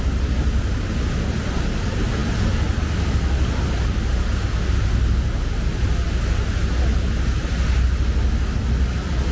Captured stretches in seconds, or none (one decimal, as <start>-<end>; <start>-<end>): 0.0-9.3